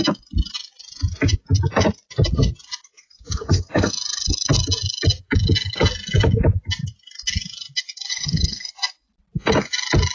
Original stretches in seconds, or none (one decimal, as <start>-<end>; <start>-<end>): 0.0-2.8; 3.9-8.1; 8.7-10.1